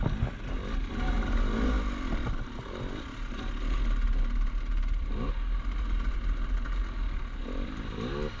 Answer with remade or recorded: recorded